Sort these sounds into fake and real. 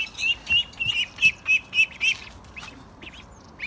real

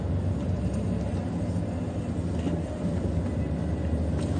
real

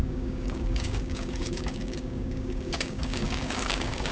fake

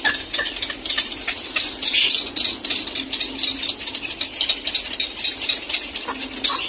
real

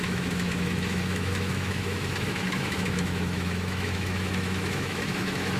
fake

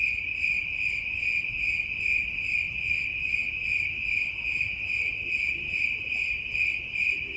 real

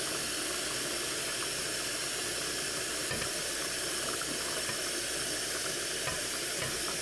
real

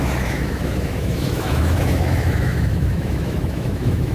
fake